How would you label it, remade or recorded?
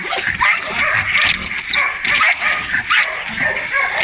remade